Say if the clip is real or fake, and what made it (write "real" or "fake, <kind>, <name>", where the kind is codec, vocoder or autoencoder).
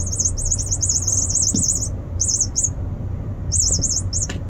real